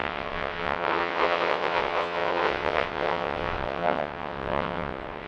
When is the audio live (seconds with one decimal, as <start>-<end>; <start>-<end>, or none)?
none